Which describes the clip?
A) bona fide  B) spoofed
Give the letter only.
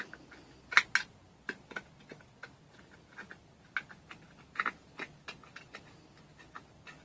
A